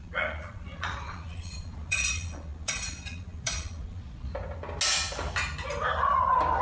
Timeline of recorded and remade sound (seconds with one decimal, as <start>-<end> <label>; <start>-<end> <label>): 0.0-4.3 remade; 4.3-6.6 recorded